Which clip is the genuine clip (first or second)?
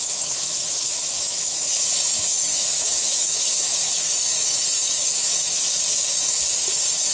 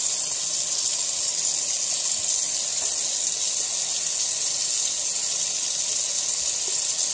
second